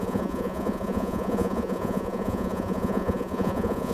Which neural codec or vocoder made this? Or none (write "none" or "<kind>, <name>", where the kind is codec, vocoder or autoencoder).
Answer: vocoder, Vocos